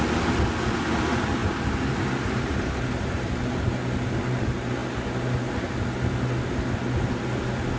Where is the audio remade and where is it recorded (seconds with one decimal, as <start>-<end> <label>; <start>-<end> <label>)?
0.0-1.4 recorded; 1.4-3.3 remade; 3.3-7.8 recorded